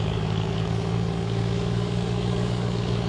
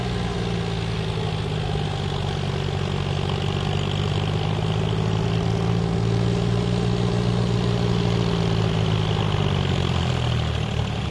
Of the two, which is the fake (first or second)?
first